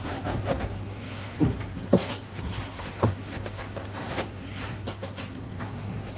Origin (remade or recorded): remade